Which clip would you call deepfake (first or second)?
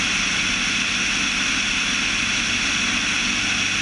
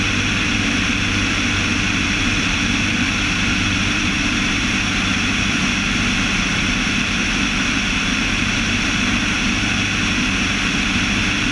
second